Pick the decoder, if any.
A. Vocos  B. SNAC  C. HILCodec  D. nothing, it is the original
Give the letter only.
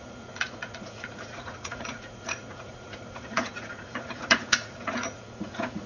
A